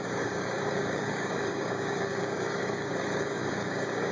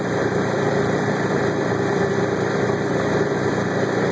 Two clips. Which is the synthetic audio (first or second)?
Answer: first